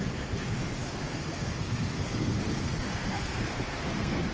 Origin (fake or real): fake